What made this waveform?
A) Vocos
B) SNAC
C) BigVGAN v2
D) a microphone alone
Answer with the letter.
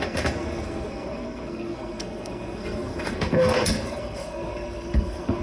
B